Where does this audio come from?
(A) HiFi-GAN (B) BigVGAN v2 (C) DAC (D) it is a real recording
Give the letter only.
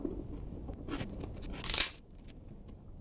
D